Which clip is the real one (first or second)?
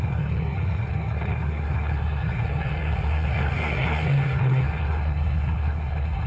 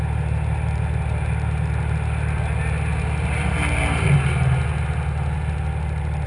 second